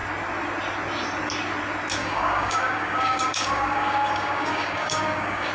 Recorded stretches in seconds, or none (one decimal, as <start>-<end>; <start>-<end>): 0.0-2.0